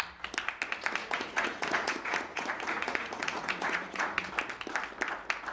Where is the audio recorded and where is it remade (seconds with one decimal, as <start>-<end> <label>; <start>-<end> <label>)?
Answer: 0.0-1.0 recorded; 1.0-4.3 remade; 4.3-5.5 recorded